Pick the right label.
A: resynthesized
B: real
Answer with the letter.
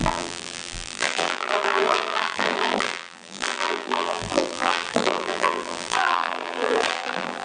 A